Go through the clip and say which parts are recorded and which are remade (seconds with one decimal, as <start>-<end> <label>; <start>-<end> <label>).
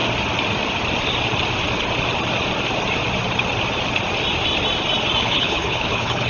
0.0-5.2 recorded; 5.2-6.3 remade